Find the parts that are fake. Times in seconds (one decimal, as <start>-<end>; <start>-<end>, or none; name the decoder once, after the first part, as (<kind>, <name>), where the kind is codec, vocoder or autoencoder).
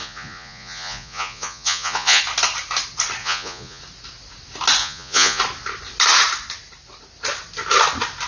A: 0.0-2.2 (vocoder, Vocos); 3.2-3.8; 4.8-5.4